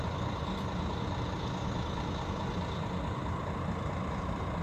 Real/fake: real